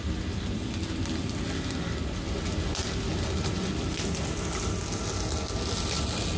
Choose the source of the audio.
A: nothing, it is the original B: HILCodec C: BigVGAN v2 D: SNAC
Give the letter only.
A